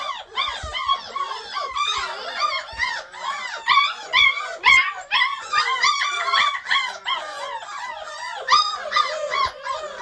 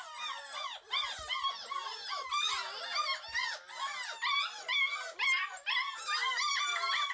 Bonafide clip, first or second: second